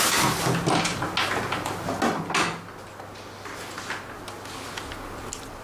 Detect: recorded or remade recorded